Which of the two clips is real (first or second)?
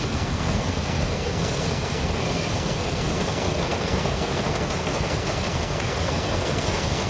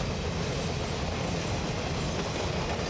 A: second